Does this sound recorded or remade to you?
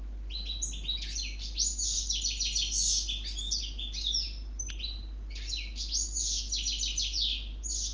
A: recorded